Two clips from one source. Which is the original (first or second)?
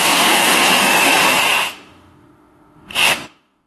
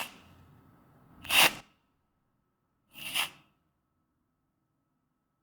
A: second